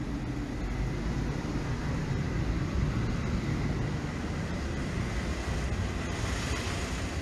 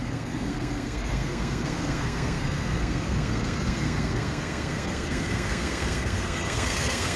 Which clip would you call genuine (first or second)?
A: first